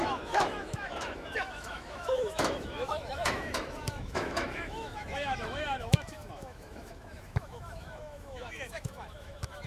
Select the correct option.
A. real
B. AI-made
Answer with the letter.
B